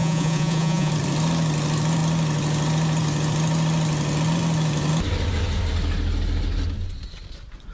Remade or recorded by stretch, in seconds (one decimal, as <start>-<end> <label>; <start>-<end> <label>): 0.0-0.9 remade; 0.9-7.7 recorded